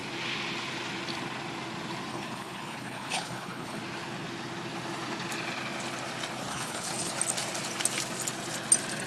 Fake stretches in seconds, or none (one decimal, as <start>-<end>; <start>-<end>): 2.1-3.8; 6.5-7.1